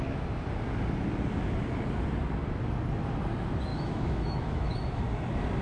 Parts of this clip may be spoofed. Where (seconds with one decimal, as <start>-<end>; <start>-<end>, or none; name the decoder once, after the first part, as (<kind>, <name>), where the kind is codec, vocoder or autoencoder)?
3.7-5.0 (autoencoder, DAC-VAE)

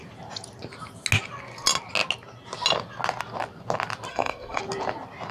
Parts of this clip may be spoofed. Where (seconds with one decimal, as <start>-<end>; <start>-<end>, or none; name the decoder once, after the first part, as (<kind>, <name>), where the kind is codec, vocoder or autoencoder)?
4.1-4.6 (codec, SNAC)